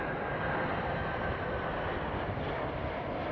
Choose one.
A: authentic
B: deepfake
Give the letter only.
A